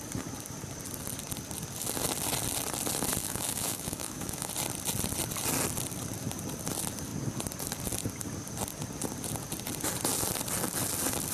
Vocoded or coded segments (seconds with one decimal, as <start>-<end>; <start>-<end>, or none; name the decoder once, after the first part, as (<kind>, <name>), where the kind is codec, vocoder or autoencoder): 3.2-4.5 (autoencoder, DAC-VAE)